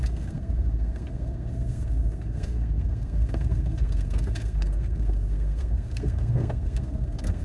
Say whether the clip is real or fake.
fake